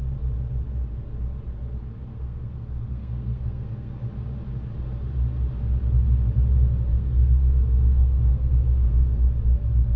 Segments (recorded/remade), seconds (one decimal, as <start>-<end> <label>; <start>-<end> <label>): 0.0-2.1 recorded; 2.1-4.1 remade; 4.1-6.9 recorded; 6.9-9.2 remade; 9.2-10.0 recorded